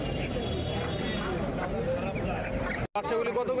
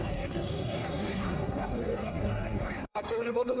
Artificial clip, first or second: second